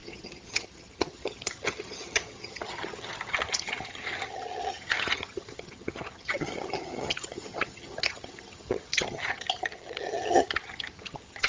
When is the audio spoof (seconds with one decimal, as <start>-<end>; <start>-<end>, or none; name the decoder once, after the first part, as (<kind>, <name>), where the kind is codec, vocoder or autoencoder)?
0.0-11.5 (vocoder, HiFi-GAN)